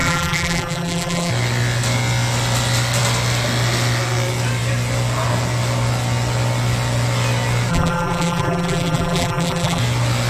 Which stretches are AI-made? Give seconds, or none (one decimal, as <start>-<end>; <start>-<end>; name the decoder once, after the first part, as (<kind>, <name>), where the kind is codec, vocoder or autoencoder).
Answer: 0.0-1.3 (vocoder, BigVGAN v2); 7.7-9.8